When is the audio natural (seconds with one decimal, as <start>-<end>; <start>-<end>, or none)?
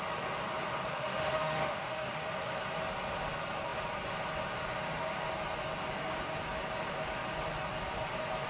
0.0-0.9; 2.3-8.5